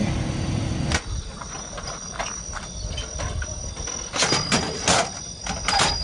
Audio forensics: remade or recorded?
recorded